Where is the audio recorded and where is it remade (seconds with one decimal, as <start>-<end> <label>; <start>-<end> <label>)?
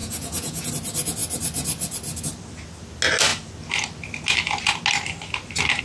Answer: 0.0-0.7 remade; 0.7-5.8 recorded